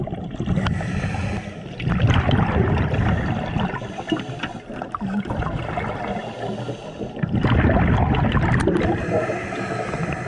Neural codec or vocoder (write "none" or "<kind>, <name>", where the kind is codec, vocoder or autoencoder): none